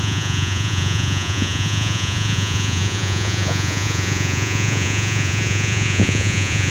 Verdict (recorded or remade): remade